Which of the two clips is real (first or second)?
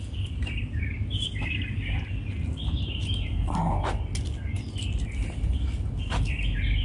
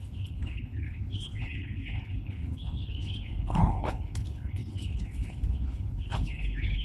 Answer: first